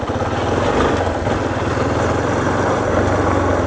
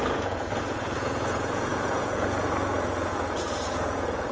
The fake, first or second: second